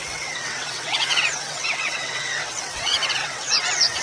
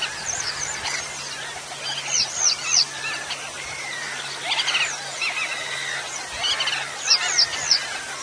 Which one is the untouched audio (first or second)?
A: second